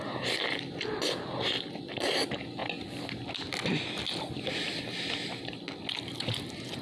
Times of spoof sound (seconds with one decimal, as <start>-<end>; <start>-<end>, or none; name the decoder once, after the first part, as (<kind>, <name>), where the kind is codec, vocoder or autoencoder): none